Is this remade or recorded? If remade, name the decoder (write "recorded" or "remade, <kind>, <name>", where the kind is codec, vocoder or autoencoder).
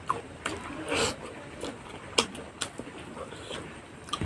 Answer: recorded